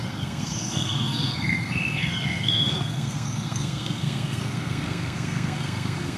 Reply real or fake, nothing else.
fake